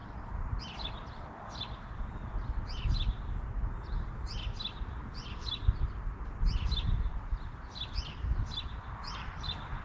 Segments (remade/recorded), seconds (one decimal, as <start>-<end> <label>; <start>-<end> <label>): 0.0-9.8 recorded